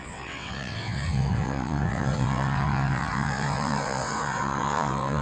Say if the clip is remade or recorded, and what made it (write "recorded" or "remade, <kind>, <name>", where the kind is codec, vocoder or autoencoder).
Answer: remade, vocoder, WaveNeXt